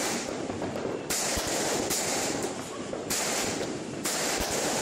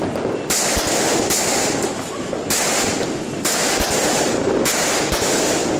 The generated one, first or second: first